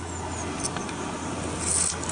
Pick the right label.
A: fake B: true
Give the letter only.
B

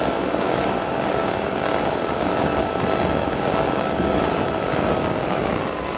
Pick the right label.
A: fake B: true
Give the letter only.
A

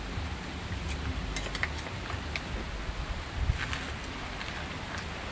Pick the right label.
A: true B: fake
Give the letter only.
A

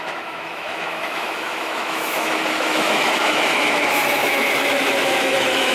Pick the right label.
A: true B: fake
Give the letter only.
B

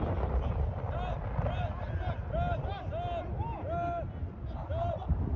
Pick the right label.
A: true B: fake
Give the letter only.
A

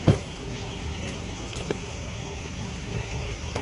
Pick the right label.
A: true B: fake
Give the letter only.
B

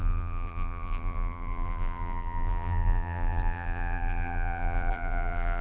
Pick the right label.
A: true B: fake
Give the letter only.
B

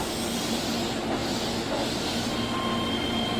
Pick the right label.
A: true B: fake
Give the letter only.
A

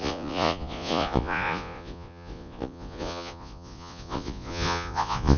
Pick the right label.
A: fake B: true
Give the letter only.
A